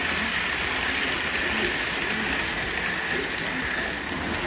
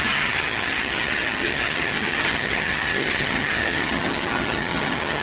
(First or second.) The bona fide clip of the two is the first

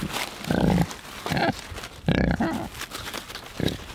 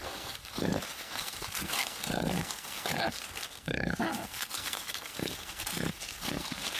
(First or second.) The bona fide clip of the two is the first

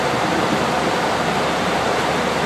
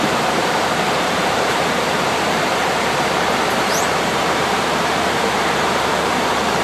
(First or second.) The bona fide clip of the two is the first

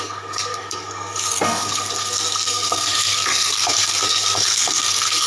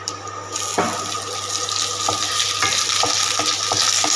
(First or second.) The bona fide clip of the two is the second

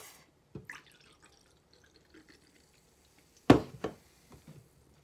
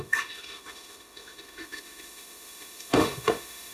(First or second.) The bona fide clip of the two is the first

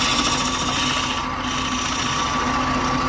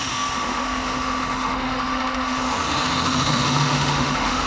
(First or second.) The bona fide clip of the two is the first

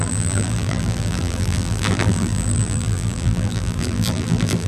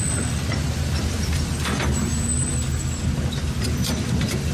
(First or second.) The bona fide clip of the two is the second